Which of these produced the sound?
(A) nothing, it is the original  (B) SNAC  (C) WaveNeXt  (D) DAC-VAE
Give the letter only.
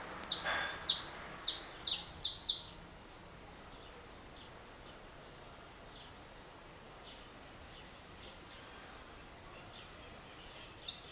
A